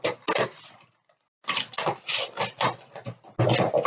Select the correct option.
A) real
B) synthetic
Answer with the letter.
A